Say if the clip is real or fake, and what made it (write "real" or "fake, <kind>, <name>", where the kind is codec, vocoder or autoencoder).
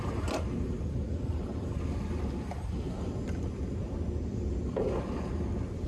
real